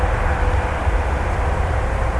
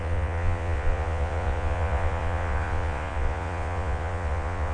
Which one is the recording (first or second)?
first